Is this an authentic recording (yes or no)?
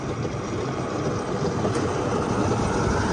yes